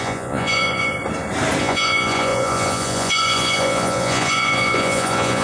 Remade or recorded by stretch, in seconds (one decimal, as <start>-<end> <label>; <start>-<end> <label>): 0.0-1.0 remade; 1.0-1.6 recorded; 1.6-5.4 remade